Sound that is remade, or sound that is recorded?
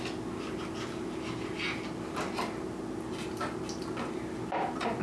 recorded